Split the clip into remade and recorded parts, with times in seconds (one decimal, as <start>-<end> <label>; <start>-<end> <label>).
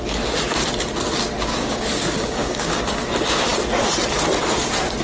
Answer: 0.0-1.5 recorded; 1.5-2.8 remade; 2.8-5.0 recorded